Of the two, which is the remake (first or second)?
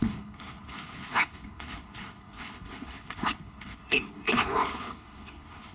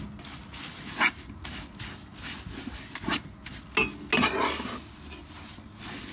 first